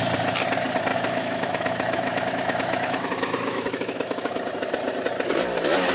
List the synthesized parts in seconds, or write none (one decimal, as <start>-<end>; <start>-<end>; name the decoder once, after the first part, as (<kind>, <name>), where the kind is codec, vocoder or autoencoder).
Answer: 0.9-4.4 (autoencoder, DAC-VAE)